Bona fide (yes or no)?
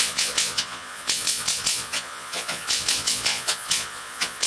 no